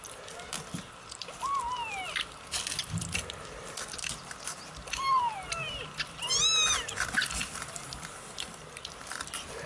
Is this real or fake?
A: real